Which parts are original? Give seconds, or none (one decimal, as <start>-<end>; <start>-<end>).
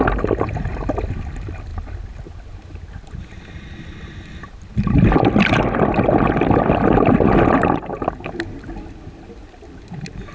0.0-10.3